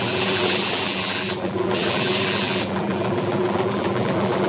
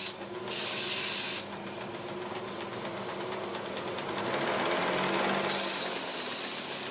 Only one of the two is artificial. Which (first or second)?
first